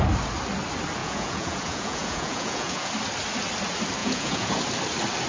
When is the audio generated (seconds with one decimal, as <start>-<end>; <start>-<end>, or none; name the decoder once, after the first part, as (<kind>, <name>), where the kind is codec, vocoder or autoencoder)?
1.0-2.9 (vocoder, Vocos); 4.0-4.6